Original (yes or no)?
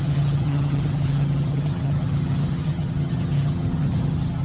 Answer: no